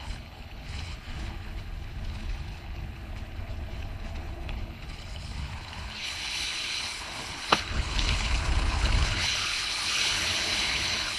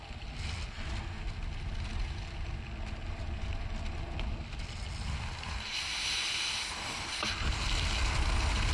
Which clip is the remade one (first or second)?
first